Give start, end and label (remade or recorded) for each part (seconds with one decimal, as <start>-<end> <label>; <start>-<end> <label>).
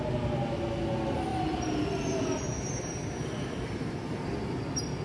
0.0-1.3 recorded; 1.3-4.3 remade; 4.3-5.0 recorded